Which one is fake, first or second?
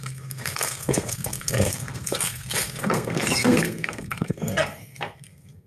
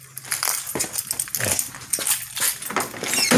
first